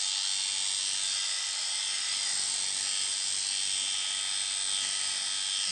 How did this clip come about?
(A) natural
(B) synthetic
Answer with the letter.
A